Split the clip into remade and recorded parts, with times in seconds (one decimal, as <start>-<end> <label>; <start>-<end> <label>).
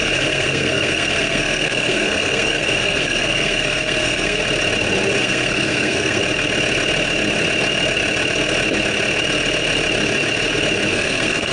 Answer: 0.0-4.4 remade; 4.4-5.2 recorded; 5.2-6.2 remade; 6.2-10.9 recorded; 10.9-11.5 remade